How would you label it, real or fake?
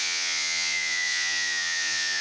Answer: fake